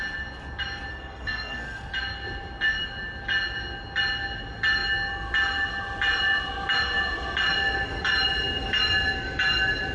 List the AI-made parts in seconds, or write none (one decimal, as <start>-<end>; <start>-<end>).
0.9-1.9